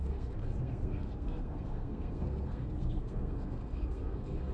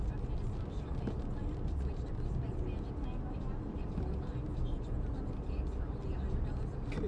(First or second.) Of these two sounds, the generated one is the first